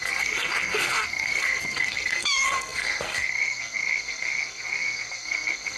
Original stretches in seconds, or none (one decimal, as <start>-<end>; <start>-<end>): none